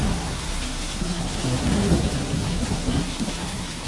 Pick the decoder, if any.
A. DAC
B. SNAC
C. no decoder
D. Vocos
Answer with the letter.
B